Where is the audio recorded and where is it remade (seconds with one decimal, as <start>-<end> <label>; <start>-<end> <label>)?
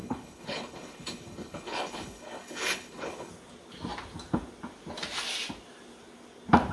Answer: 0.0-3.3 remade; 3.3-6.7 recorded